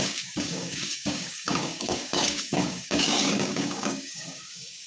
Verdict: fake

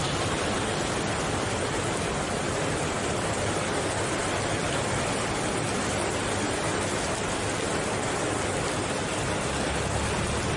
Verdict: real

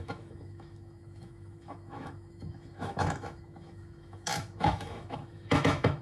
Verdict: fake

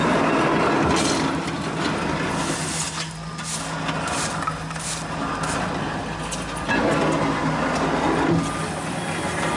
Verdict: real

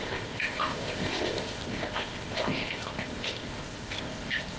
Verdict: fake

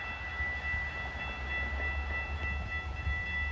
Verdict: real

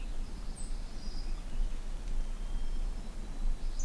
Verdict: real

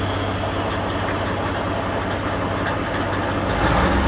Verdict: real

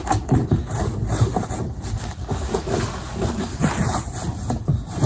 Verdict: real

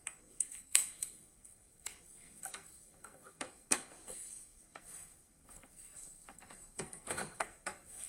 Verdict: fake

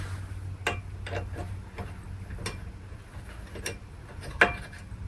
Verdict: real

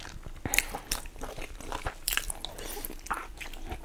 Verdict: real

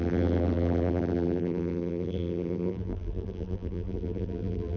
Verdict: fake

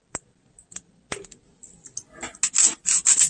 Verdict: real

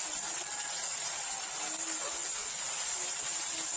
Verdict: real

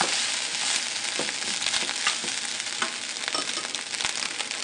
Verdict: real